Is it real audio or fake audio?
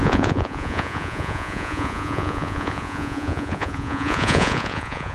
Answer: fake